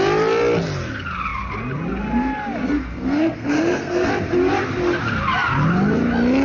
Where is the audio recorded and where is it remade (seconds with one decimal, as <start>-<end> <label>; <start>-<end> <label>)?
0.0-2.6 recorded; 2.6-4.1 remade; 4.1-6.4 recorded